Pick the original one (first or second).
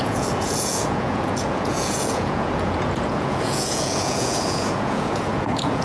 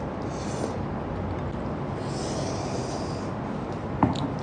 second